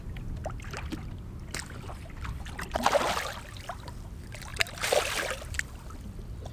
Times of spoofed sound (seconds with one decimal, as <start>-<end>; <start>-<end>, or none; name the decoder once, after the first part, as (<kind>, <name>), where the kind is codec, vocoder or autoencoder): 4.5-5.0 (vocoder, BigVGAN v2)